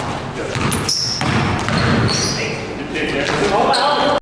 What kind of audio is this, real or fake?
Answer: real